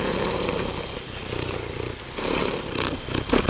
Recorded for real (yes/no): no